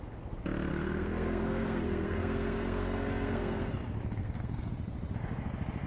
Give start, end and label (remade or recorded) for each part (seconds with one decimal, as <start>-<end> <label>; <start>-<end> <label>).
0.0-0.7 recorded; 0.7-3.7 remade; 3.7-4.2 recorded; 4.2-4.7 remade; 4.7-5.9 recorded